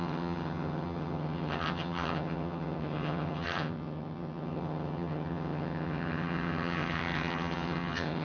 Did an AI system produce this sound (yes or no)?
yes